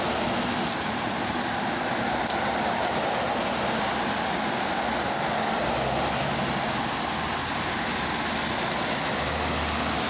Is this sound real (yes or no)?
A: yes